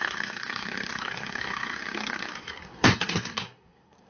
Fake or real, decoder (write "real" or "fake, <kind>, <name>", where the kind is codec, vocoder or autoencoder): fake, codec, SNAC